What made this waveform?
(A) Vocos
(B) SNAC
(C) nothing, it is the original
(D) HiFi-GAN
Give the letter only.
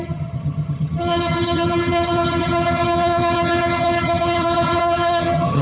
D